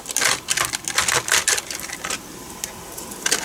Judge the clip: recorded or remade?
recorded